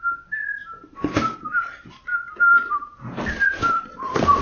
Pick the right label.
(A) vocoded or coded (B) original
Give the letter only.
B